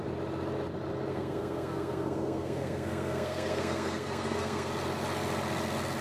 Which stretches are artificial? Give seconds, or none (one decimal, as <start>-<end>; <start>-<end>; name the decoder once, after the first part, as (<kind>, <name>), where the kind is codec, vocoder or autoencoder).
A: 1.1-4.7 (codec, SNAC)